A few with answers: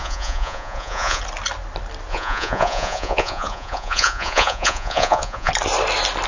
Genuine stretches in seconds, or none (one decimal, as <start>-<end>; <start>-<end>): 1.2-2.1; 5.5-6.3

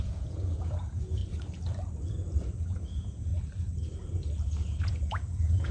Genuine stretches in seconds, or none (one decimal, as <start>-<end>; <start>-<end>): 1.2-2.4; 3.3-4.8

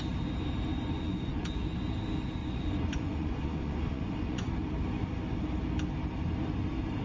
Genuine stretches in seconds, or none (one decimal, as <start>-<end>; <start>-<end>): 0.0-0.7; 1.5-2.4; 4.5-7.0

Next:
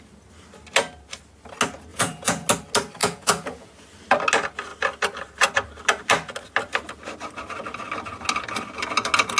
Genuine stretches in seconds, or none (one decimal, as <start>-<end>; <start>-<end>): 0.0-1.9; 2.5-3.0; 3.7-9.4